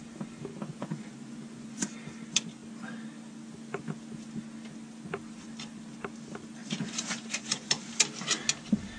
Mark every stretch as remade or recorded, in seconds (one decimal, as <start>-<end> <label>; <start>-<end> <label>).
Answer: 0.0-0.7 recorded; 0.7-1.8 remade; 1.8-6.6 recorded; 6.6-7.9 remade; 7.9-9.0 recorded